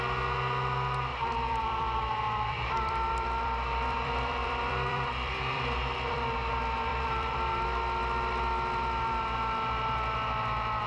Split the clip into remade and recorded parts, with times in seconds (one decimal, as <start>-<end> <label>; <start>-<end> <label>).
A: 0.0-1.1 recorded; 1.1-6.2 remade; 6.2-6.9 recorded; 6.9-7.5 remade; 7.5-10.9 recorded